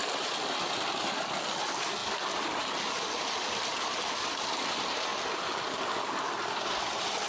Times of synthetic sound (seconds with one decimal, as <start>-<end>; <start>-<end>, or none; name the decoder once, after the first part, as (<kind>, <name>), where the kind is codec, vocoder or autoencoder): 0.0-1.0 (vocoder, BigVGAN v2); 2.0-3.3